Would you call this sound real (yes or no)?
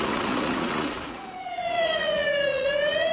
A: no